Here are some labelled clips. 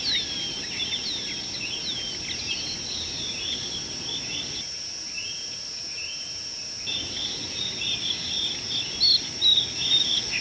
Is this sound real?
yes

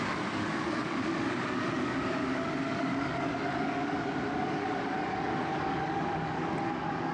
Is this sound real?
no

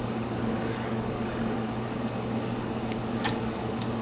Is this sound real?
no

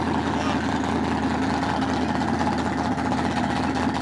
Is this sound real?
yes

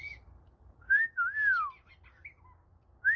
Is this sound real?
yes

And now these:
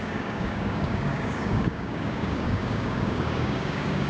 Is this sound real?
no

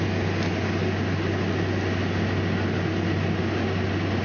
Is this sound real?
yes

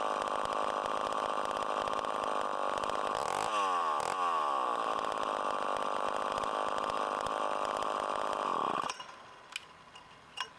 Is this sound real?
yes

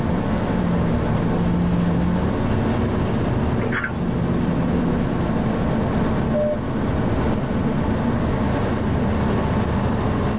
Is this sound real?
yes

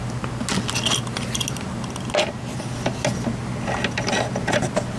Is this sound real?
yes